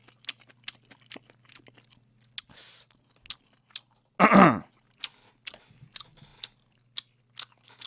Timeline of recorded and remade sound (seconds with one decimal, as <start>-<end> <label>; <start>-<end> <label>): 0.0-7.9 recorded